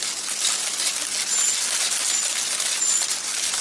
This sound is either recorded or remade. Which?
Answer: recorded